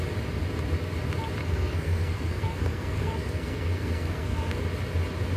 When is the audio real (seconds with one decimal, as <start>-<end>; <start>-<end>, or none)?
0.0-1.4; 4.6-5.4

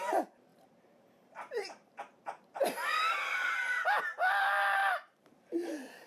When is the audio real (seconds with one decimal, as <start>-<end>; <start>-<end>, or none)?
0.0-0.5; 4.0-4.8

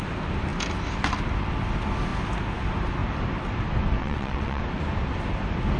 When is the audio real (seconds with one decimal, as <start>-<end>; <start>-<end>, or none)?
0.0-4.0; 4.6-5.8

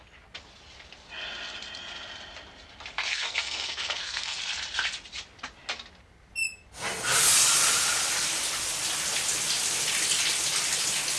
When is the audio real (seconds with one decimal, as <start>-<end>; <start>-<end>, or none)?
0.0-3.1; 4.4-11.2

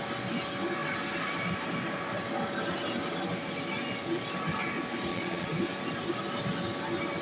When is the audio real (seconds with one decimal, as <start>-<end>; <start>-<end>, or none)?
0.0-5.1; 5.6-7.2

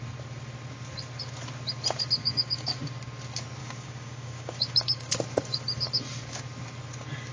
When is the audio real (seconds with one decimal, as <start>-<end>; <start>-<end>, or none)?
0.0-2.2; 2.8-3.6; 5.1-7.3

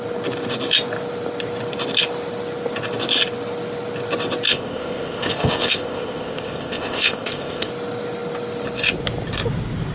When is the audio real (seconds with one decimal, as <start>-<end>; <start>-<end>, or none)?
0.0-4.5; 7.7-9.9

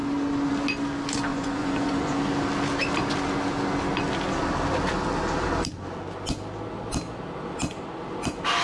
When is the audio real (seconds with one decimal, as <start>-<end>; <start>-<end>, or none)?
0.0-1.3; 2.2-8.6